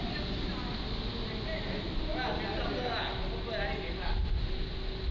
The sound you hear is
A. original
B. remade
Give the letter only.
A